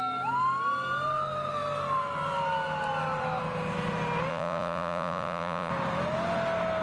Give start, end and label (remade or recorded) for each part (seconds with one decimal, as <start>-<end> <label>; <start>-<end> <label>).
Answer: 0.0-4.3 recorded; 4.3-5.7 remade; 5.7-6.8 recorded